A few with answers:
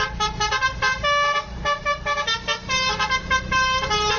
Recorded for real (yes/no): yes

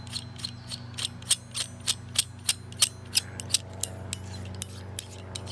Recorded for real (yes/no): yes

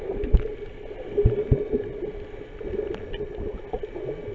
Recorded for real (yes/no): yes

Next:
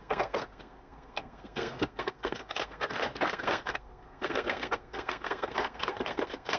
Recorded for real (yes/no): no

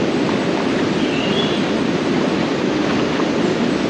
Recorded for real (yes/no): yes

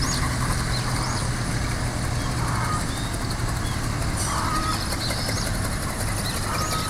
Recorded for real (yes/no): yes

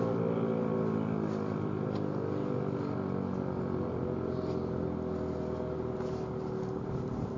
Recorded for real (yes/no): yes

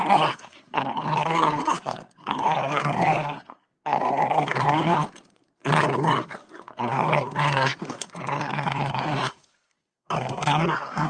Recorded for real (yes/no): no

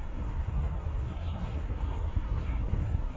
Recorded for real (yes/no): no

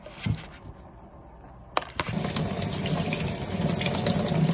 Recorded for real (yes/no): yes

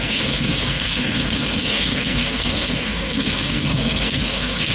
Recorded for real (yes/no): no